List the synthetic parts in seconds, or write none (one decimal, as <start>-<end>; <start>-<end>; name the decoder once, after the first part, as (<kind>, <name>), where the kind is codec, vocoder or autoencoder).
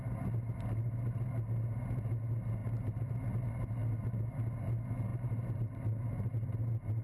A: 5.1-6.0 (vocoder, BigVGAN v2)